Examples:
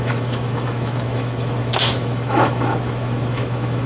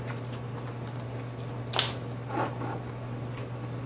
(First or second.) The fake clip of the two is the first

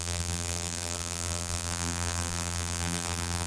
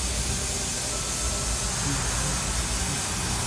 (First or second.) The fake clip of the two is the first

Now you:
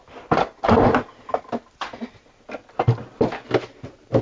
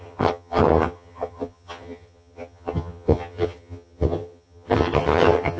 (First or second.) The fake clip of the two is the second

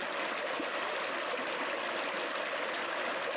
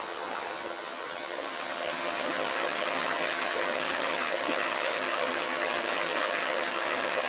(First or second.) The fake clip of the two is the second